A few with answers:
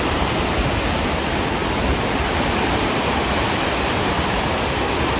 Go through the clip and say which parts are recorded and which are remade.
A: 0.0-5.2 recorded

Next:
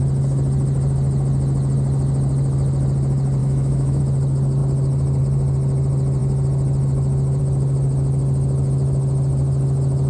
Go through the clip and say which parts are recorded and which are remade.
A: 0.0-3.4 recorded; 3.4-4.0 remade; 4.0-10.1 recorded

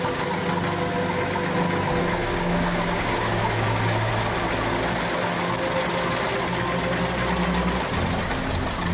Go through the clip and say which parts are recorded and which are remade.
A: 0.0-2.2 recorded; 2.2-4.1 remade; 4.1-8.9 recorded

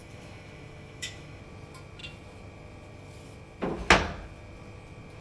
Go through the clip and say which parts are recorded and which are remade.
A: 0.0-1.4 remade; 1.4-5.2 recorded

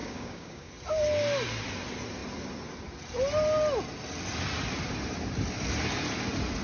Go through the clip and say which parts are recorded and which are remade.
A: 0.0-0.7 remade; 0.7-6.6 recorded

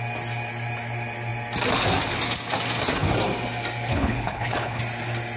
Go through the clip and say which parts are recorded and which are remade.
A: 0.0-3.9 recorded; 3.9-4.8 remade; 4.8-5.4 recorded

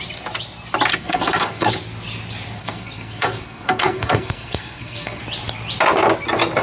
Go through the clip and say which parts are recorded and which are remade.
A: 0.0-0.9 recorded; 0.9-1.7 remade; 1.7-2.6 recorded; 2.6-5.2 remade; 5.2-6.6 recorded

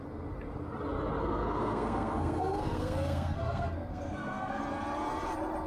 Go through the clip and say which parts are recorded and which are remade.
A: 0.0-1.2 recorded; 1.2-4.6 remade; 4.6-5.7 recorded